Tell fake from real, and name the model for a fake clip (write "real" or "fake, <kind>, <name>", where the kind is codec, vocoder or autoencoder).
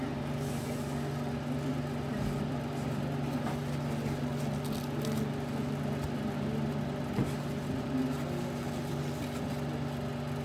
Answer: real